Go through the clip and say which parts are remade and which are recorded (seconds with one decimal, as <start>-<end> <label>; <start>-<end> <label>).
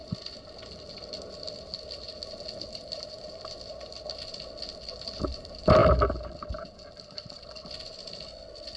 0.0-8.8 recorded